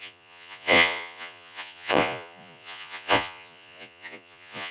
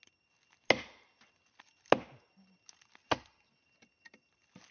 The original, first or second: second